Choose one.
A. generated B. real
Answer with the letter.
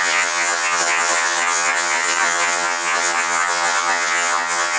A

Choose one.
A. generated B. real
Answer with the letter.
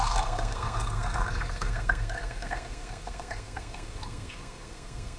A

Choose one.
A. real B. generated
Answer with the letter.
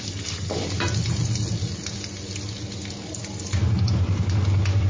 A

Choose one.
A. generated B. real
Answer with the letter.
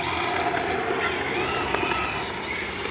B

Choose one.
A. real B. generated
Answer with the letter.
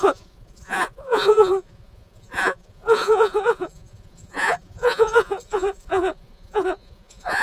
B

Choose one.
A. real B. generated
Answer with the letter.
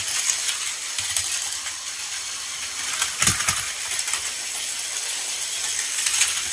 A